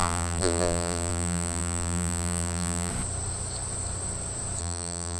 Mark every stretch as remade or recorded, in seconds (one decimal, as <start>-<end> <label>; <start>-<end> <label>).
0.0-2.9 remade; 2.9-4.6 recorded; 4.6-5.2 remade